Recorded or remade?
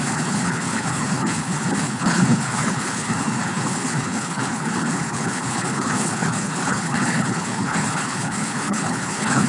remade